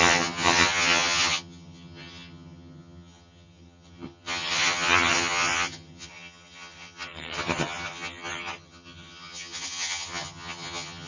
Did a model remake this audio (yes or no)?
yes